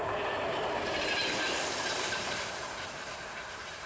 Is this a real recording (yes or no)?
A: no